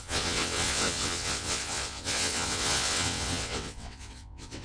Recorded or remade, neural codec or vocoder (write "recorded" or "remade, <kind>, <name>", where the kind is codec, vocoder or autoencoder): remade, vocoder, WaveNeXt